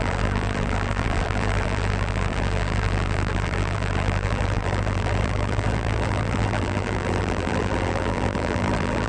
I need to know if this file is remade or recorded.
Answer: remade